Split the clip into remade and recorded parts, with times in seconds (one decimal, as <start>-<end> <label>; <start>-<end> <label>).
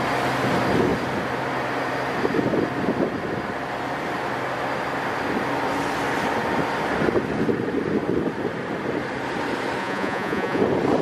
0.0-9.8 recorded; 9.8-10.6 remade; 10.6-11.0 recorded